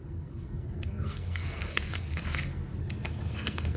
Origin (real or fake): fake